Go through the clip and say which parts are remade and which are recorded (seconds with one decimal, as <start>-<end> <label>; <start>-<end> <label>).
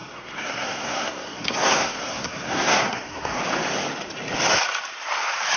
0.0-3.4 remade; 3.4-5.6 recorded